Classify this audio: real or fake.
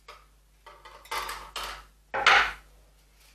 real